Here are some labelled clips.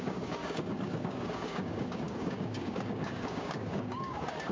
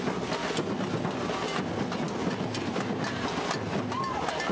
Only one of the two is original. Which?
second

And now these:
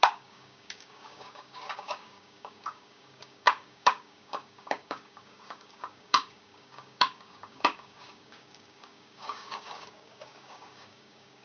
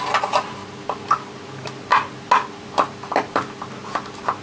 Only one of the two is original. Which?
second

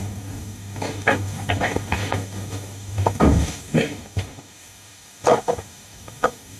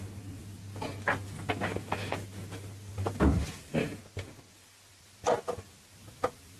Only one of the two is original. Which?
second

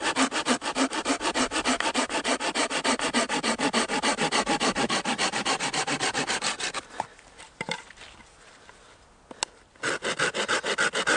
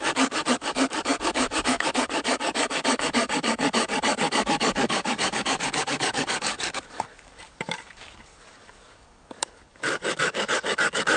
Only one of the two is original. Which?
first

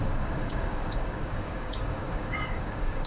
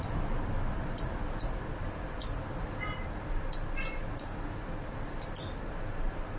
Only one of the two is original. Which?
second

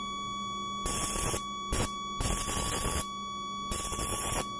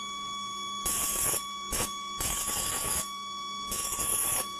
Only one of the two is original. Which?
first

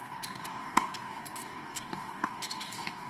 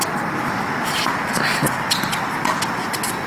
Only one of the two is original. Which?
second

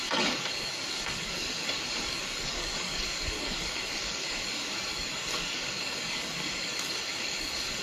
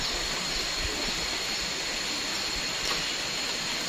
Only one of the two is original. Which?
second